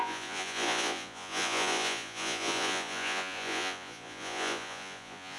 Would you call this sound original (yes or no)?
no